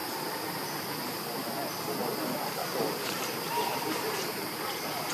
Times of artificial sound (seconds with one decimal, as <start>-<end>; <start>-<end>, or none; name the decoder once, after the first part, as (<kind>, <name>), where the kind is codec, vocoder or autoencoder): 0.0-0.9 (vocoder, BigVGAN v2); 2.0-5.1